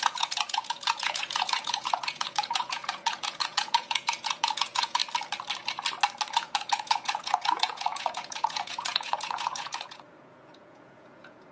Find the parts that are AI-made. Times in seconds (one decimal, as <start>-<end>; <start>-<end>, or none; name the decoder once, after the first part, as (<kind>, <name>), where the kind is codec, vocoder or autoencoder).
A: 0.0-5.0 (vocoder, Vocos); 6.3-11.5